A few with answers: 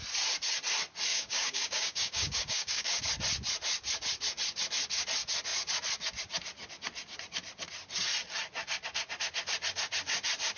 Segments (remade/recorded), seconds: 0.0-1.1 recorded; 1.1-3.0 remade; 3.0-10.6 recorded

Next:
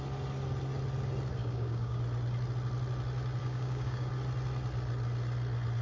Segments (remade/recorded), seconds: 0.0-1.4 recorded; 1.4-2.0 remade; 2.0-3.4 recorded; 3.4-4.1 remade; 4.1-5.8 recorded